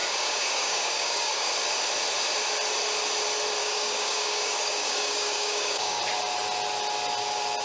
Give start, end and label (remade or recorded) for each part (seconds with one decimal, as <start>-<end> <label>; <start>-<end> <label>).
0.0-1.5 remade; 1.5-3.6 recorded; 3.6-6.0 remade; 6.0-7.6 recorded